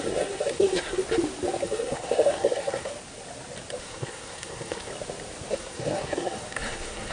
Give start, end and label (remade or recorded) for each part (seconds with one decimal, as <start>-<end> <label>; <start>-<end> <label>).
0.0-1.0 remade; 1.0-1.6 recorded; 1.6-2.9 remade; 2.9-3.8 recorded; 3.8-4.9 remade; 4.9-5.5 recorded; 5.5-7.1 remade